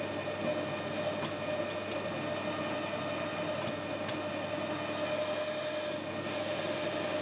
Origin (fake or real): real